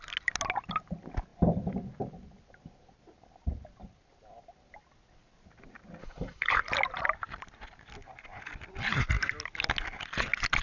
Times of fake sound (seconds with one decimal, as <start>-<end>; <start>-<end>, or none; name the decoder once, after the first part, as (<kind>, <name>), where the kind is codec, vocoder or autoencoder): 6.0-6.6 (codec, HILCodec)